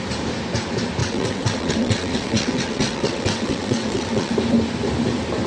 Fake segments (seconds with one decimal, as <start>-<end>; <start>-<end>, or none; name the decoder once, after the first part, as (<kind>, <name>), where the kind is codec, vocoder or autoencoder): 1.0-4.3 (vocoder, WaveNeXt)